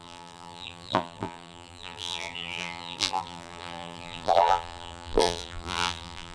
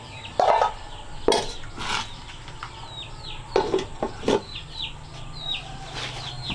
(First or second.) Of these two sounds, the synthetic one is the first